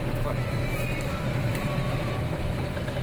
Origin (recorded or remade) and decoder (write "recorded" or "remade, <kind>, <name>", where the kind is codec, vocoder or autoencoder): recorded